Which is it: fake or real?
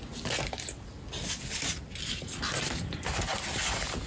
real